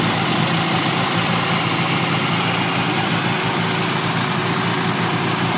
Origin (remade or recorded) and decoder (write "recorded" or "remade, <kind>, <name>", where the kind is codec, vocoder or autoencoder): recorded